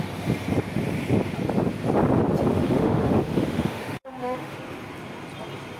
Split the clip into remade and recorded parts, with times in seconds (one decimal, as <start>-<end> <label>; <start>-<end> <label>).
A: 0.0-2.5 recorded; 2.5-4.6 remade; 4.6-5.8 recorded